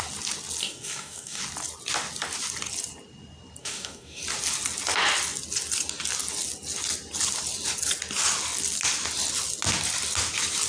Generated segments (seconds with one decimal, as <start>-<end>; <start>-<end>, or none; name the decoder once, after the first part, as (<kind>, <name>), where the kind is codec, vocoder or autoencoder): 0.6-1.4 (codec, DAC); 3.6-4.2